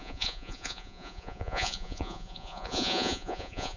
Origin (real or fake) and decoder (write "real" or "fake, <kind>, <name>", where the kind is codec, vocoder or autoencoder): fake, vocoder, Vocos